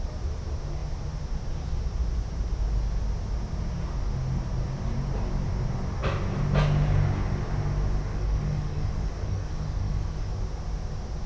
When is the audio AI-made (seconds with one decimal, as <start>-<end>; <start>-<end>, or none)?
8.1-10.3